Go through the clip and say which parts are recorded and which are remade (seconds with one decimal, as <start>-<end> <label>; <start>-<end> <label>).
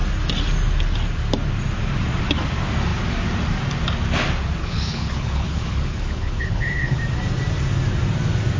0.0-4.6 recorded; 4.6-7.0 remade; 7.0-8.6 recorded